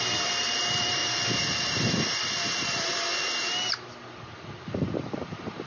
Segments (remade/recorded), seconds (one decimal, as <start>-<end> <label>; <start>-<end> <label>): 0.0-1.0 remade; 1.0-1.6 recorded; 1.6-3.1 remade; 3.1-4.5 recorded; 4.5-5.7 remade